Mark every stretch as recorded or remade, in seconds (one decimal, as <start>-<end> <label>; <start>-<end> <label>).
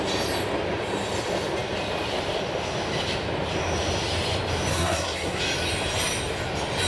0.0-4.7 recorded; 4.7-5.4 remade; 5.4-6.9 recorded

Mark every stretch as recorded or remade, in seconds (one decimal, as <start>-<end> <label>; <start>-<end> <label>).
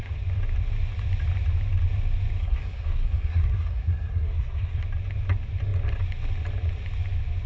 0.0-2.4 recorded; 2.4-4.8 remade; 4.8-7.5 recorded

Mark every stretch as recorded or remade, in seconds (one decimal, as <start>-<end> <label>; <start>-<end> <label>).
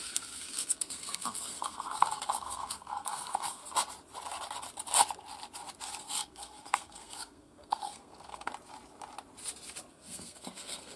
0.0-3.6 remade; 3.6-6.0 recorded; 6.0-8.5 remade; 8.5-9.9 recorded; 9.9-11.0 remade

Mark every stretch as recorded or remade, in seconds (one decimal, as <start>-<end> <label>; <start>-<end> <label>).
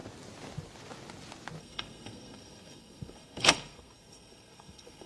0.0-1.6 recorded; 1.6-5.1 remade